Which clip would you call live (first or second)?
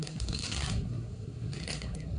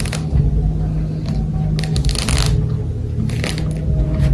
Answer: second